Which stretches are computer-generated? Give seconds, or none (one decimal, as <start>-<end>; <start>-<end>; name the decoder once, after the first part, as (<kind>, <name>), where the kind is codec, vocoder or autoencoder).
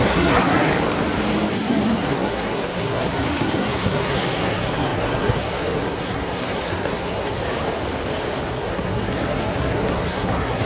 0.0-0.7 (codec, SNAC); 1.5-7.4; 8.5-10.7